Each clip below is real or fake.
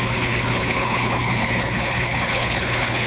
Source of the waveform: fake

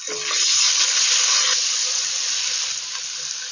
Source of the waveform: real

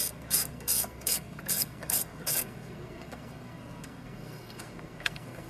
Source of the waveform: fake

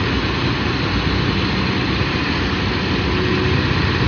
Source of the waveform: real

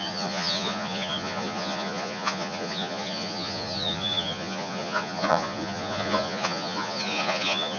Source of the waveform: fake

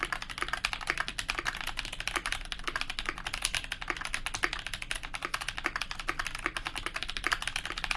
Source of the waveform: real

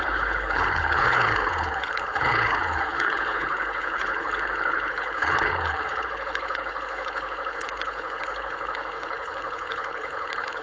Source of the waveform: fake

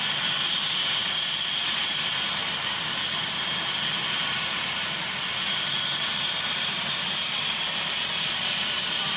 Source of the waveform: real